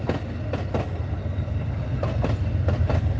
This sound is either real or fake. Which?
real